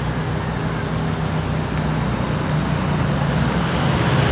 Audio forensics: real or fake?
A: real